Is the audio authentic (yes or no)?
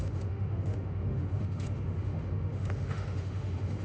no